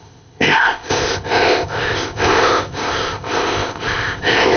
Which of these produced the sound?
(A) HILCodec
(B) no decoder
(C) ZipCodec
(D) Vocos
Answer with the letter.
C